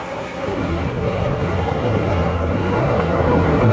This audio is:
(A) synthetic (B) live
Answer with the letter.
A